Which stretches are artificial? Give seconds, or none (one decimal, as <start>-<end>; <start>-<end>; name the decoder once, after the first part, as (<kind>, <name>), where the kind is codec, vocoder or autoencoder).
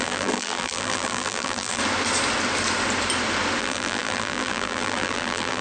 0.0-1.8 (vocoder, BigVGAN v2); 3.6-5.6